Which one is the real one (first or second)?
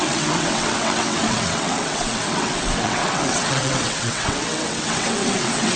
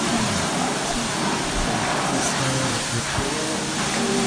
second